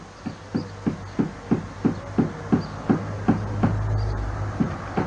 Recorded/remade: recorded